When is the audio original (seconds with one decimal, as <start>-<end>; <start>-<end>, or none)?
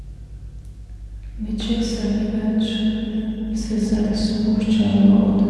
0.0-3.1; 4.3-5.5